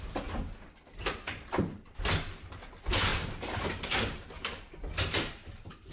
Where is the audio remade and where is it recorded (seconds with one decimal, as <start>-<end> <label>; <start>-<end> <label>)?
0.0-3.1 recorded; 3.1-4.2 remade; 4.2-5.9 recorded